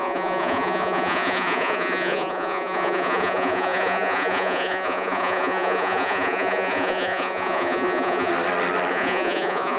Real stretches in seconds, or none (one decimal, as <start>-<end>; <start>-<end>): 8.3-8.9